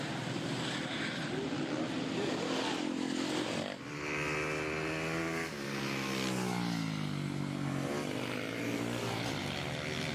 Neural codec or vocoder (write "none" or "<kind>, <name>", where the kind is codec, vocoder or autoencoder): none